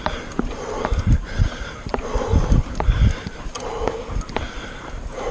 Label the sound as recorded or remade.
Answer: recorded